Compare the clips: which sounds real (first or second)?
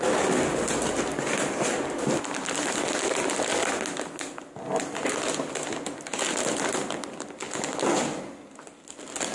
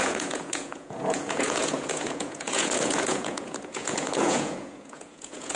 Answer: first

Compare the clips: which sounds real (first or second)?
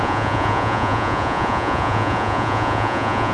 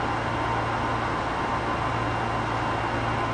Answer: second